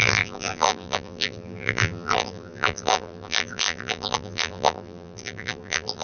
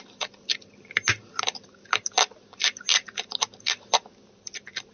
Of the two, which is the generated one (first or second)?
first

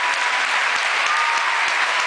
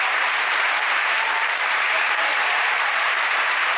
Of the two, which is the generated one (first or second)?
second